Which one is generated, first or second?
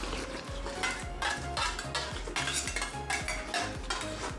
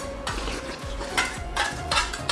second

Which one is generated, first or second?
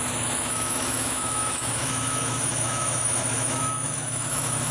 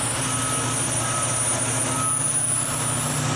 first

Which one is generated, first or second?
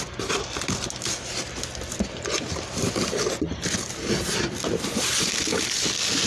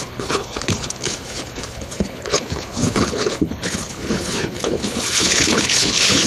second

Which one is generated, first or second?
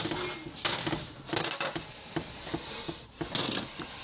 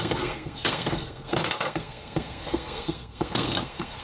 second